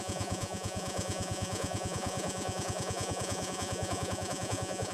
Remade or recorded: remade